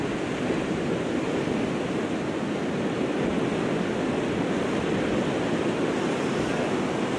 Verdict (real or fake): real